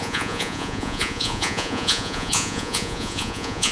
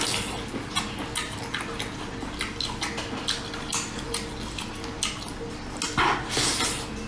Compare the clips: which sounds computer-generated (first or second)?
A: first